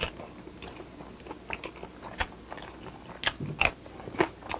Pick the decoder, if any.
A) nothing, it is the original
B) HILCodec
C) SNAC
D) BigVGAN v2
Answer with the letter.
A